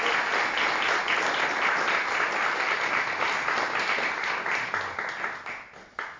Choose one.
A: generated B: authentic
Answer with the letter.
B